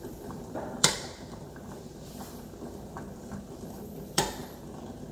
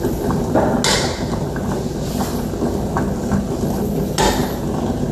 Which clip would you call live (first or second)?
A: second